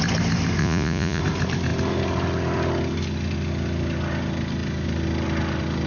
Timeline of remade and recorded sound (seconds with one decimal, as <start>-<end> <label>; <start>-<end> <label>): 0.0-0.6 recorded; 0.6-1.2 remade; 1.2-5.9 recorded